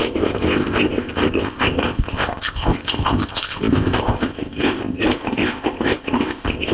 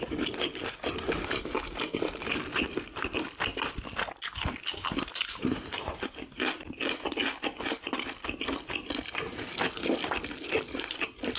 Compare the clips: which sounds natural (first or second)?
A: second